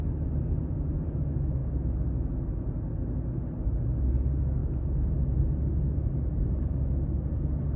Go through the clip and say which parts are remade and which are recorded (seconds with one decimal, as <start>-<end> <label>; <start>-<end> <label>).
0.0-7.8 recorded